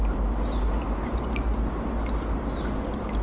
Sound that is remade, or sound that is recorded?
recorded